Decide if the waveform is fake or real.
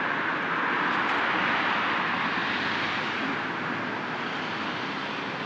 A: real